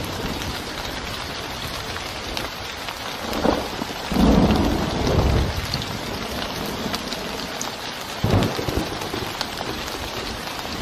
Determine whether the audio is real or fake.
real